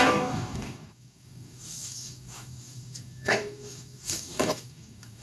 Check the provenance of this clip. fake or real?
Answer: fake